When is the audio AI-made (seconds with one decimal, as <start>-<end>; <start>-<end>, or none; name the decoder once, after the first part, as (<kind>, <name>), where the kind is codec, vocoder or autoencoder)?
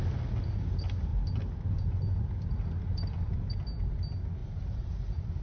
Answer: 4.4-5.4 (vocoder, BigVGAN v2)